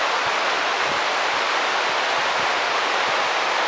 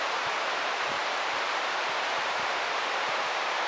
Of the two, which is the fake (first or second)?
second